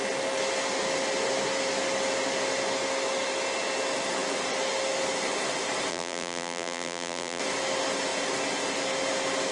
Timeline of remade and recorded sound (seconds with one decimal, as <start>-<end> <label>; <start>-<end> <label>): 0.0-5.9 recorded; 5.9-7.4 remade; 7.4-9.5 recorded